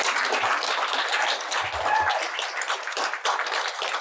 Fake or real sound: real